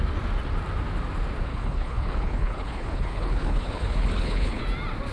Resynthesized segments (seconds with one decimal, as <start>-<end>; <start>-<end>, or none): 1.5-4.6